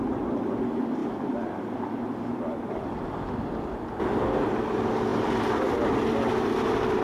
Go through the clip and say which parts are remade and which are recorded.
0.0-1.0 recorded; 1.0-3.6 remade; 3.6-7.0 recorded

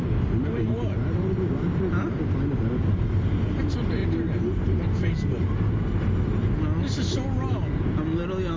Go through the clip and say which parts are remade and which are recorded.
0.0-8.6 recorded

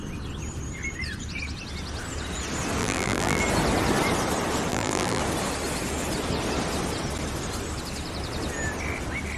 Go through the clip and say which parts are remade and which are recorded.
0.0-2.8 recorded; 2.8-3.4 remade; 3.4-4.7 recorded; 4.7-5.2 remade; 5.2-9.4 recorded

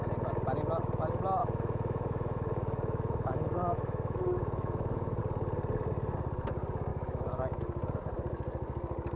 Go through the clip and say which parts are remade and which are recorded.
0.0-1.4 recorded; 1.4-5.2 remade; 5.2-6.9 recorded; 6.9-7.6 remade; 7.6-9.2 recorded

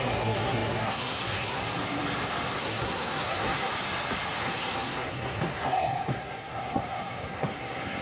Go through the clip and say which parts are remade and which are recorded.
0.0-1.6 remade; 1.6-2.6 recorded; 2.6-3.7 remade; 3.7-4.4 recorded; 4.4-8.0 remade

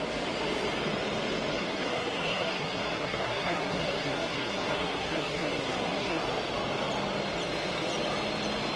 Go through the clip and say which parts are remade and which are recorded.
0.0-1.5 recorded; 1.5-6.2 remade; 6.2-8.8 recorded